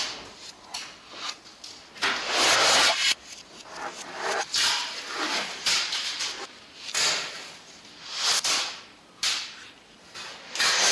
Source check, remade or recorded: recorded